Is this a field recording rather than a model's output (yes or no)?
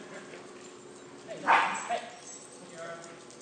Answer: yes